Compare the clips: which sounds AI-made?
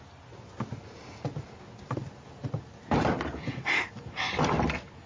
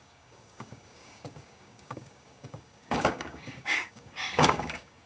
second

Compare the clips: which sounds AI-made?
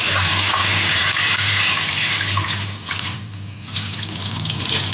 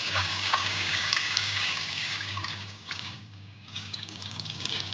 second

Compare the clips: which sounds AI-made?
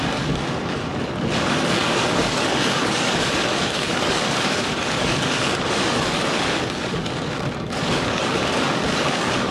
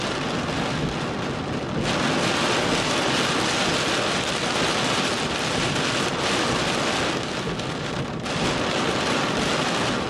first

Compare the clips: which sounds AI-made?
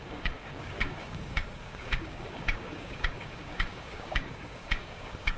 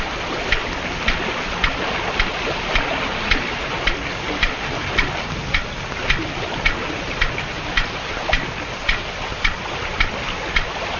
first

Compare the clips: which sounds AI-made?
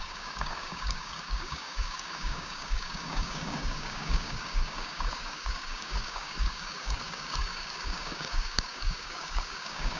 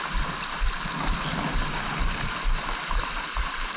first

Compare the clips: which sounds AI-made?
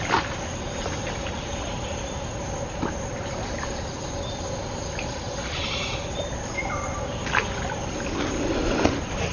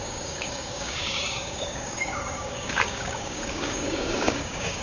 second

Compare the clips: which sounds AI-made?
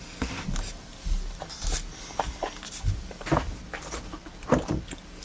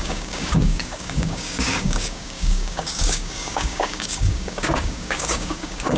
second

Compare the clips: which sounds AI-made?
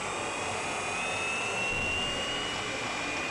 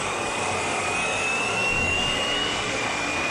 second